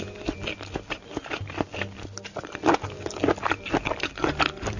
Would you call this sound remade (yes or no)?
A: no